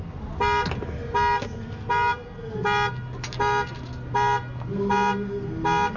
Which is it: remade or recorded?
recorded